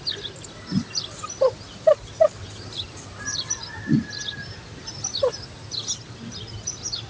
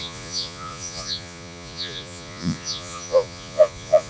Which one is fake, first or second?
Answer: second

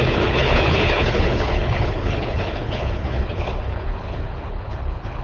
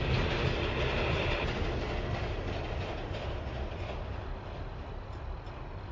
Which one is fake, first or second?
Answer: first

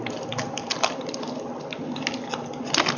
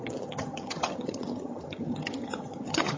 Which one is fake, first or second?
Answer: second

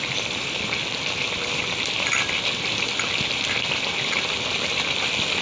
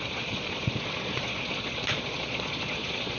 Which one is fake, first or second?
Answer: second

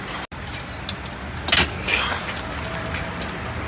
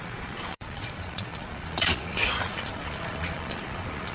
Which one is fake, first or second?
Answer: second